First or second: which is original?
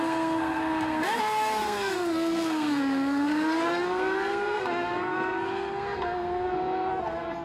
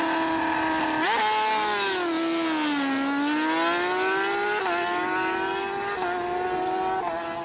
second